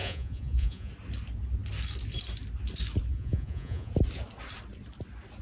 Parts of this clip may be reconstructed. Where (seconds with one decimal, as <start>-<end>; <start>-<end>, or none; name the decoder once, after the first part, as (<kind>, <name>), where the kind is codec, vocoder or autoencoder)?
0.0-0.9 (vocoder, Vocos); 3.1-3.9